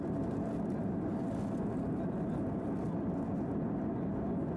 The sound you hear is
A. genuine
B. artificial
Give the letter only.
A